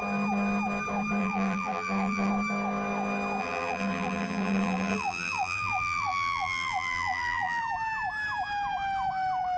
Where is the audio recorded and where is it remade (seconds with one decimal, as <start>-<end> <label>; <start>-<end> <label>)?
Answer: 0.0-1.2 recorded; 1.2-2.3 remade; 2.3-3.4 recorded; 3.4-7.6 remade; 7.6-9.6 recorded